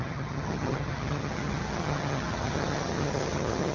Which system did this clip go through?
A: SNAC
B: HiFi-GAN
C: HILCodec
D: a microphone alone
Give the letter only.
B